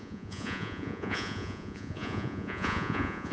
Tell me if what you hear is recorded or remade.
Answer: remade